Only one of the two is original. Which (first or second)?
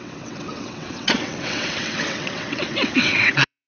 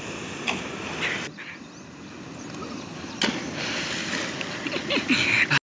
second